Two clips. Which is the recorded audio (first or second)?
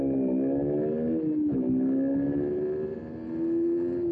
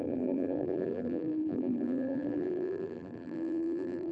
first